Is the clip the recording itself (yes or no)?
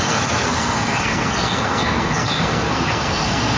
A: no